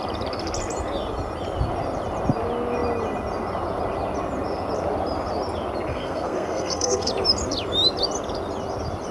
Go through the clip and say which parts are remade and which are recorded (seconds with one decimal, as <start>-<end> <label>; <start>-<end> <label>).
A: 0.0-5.9 recorded; 5.9-7.1 remade; 7.1-9.1 recorded